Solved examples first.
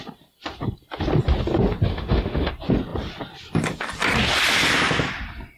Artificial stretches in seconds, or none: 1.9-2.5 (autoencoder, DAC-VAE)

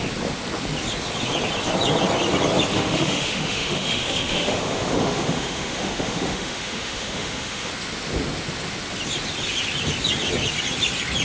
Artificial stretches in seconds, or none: 2.7-7.7 (autoencoder, DAC-VAE)

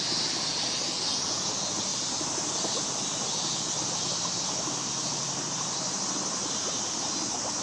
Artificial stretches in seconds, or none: none

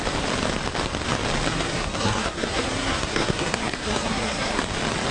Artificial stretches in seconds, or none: 1.5-4.6 (codec, SNAC)

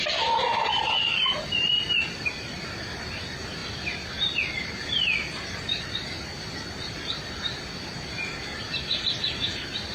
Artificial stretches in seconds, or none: 3.6-5.8 (vocoder, BigVGAN v2)

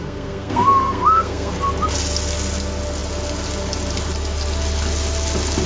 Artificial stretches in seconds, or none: 0.0-1.5 (codec, SNAC)

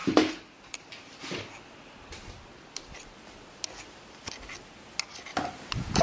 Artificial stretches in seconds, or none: none